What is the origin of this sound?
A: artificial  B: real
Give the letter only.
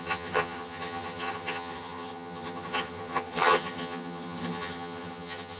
A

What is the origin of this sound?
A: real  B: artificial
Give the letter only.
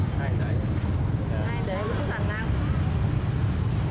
A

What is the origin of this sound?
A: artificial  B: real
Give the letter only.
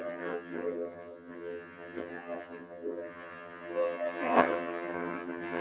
A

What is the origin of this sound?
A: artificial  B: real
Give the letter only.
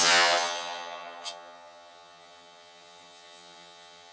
A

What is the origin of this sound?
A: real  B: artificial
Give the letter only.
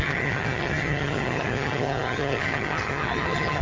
B